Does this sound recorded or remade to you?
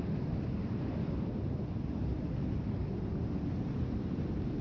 recorded